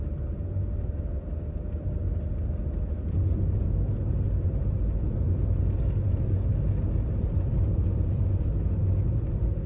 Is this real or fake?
real